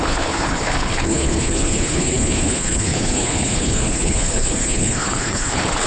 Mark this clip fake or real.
fake